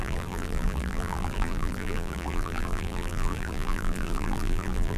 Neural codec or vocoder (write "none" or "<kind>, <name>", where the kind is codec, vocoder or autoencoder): vocoder, BigVGAN v2